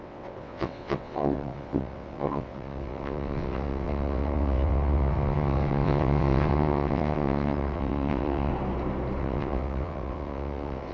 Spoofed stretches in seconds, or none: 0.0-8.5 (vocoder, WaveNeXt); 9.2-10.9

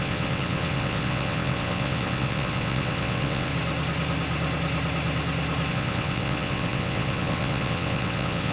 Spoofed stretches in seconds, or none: 0.0-3.5 (vocoder, WaveNeXt); 5.7-8.5

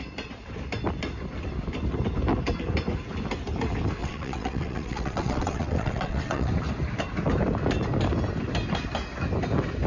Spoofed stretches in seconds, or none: 4.0-6.5 (vocoder, WaveNeXt)

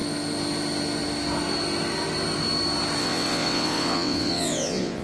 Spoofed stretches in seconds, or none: 3.0-5.0 (vocoder, WaveNeXt)

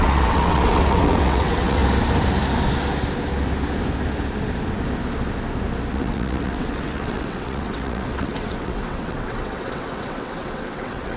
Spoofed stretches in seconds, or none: 0.0-1.8 (vocoder, WaveNeXt); 5.9-11.2

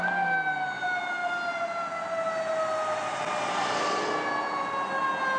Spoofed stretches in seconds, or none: none